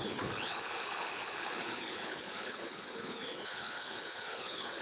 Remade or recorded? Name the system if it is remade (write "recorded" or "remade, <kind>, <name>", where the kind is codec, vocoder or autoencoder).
remade, codec, HILCodec